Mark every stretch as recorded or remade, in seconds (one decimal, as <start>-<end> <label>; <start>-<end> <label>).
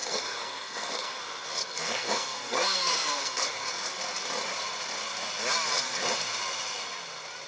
0.0-1.2 remade; 1.2-1.6 recorded; 1.6-3.5 remade; 3.5-7.5 recorded